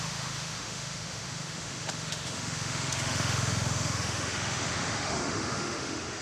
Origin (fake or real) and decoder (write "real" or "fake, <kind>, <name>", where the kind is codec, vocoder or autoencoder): fake, autoencoder, DAC-VAE